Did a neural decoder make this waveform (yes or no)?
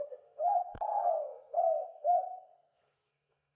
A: yes